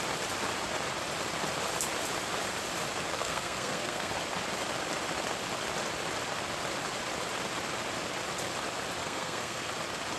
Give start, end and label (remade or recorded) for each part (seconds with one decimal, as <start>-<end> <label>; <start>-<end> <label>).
0.0-3.1 recorded; 3.1-4.1 remade; 4.1-9.0 recorded; 9.0-9.7 remade; 9.7-10.2 recorded

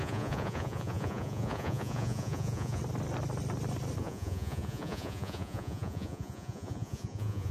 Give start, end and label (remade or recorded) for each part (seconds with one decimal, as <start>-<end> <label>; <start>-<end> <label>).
0.0-2.8 remade; 2.8-4.0 recorded; 4.0-7.5 remade